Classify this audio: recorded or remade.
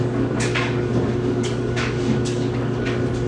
remade